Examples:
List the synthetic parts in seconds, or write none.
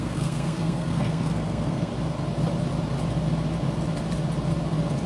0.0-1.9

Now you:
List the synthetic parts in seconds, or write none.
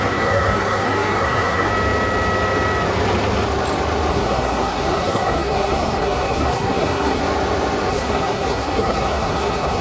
0.0-1.7; 4.1-7.2; 7.9-9.8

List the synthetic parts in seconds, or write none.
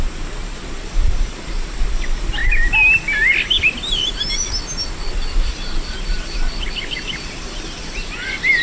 0.0-2.4; 5.5-8.6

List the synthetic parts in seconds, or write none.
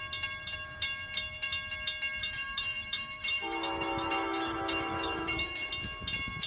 2.2-5.7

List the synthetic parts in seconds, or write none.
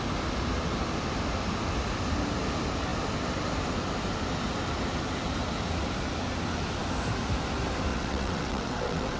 7.9-9.2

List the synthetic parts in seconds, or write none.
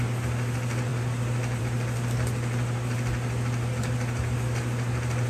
none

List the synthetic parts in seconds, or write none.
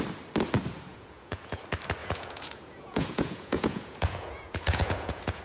0.9-1.6; 2.0-5.4